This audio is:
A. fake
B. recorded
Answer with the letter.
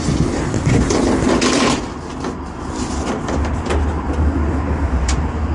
B